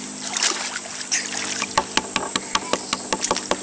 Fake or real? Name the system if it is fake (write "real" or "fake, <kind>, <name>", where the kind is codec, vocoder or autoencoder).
real